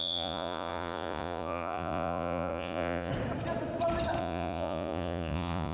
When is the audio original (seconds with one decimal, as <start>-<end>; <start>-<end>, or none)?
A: 3.1-4.2

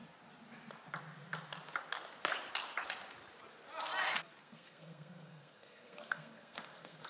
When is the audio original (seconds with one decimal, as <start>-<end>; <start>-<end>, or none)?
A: 0.0-4.4

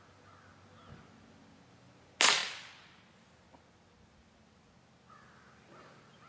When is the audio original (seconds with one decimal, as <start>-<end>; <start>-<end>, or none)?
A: 0.0-6.3

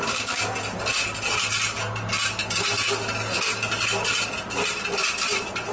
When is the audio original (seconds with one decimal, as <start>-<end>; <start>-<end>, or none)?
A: 0.0-5.7

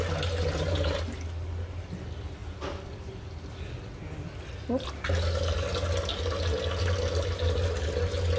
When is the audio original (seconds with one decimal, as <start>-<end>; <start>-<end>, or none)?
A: 0.0-8.4

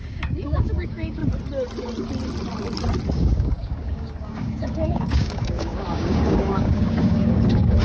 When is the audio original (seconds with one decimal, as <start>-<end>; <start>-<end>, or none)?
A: 1.2-3.1

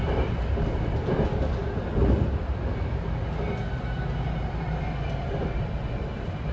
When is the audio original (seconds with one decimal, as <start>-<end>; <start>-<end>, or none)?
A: 0.0-6.5